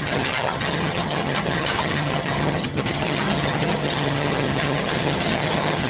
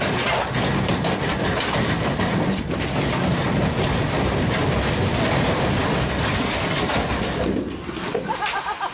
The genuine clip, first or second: second